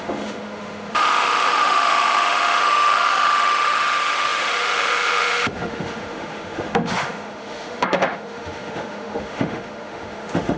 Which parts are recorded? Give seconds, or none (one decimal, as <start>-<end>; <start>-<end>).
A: none